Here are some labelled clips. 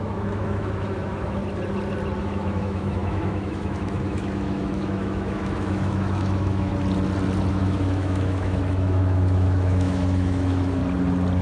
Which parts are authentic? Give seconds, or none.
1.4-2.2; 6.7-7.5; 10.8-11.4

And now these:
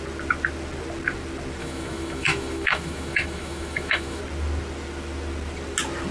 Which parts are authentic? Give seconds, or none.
0.0-1.6; 4.2-6.1

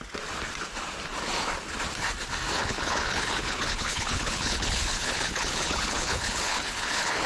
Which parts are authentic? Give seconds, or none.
0.0-2.6

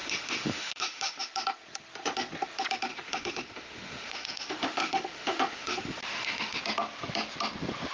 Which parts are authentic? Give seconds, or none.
1.2-2.9; 6.6-7.9

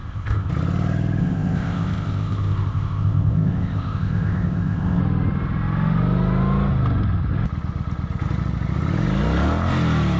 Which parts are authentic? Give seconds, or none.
0.5-1.2; 5.0-10.2